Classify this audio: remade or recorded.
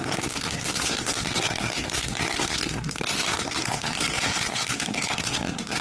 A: remade